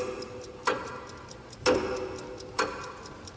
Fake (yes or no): no